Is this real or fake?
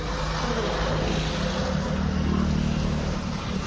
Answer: real